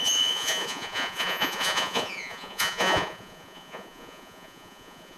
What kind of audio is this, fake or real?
fake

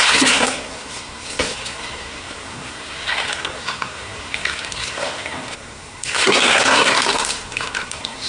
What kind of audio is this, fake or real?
fake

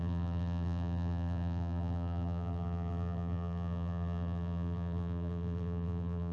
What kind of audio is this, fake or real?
fake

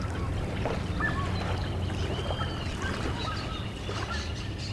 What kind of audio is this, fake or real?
real